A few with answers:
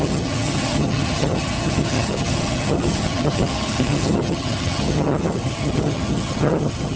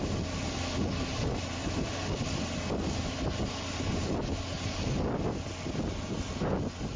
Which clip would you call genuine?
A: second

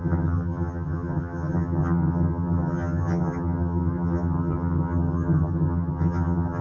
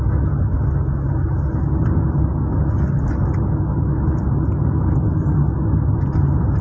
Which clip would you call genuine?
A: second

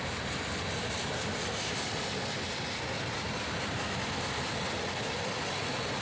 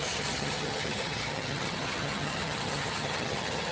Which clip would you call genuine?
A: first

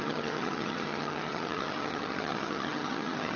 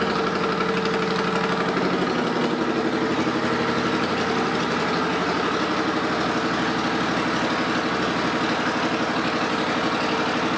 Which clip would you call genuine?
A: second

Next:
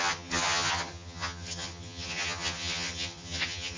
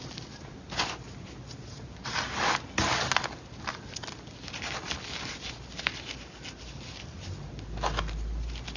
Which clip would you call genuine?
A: second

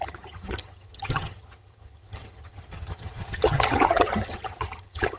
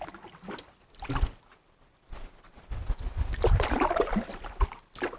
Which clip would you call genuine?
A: second